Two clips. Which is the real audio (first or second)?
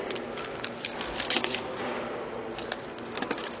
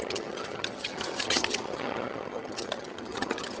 first